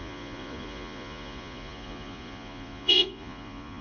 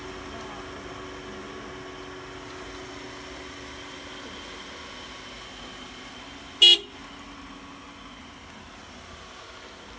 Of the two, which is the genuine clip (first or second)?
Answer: second